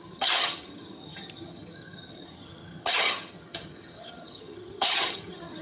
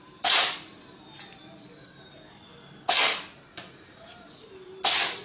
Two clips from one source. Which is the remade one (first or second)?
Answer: first